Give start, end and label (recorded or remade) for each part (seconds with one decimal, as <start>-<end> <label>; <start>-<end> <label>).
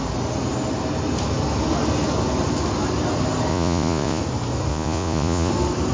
0.0-3.5 recorded; 3.5-4.2 remade; 4.2-4.7 recorded; 4.7-5.5 remade; 5.5-5.9 recorded